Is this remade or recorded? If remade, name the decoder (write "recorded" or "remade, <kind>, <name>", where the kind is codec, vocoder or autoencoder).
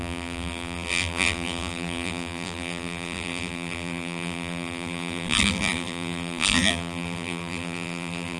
remade, vocoder, BigVGAN v2